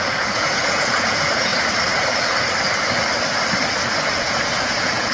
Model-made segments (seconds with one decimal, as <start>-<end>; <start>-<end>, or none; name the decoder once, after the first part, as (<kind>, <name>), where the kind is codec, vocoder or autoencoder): 0.0-1.5 (vocoder, Vocos); 4.1-5.1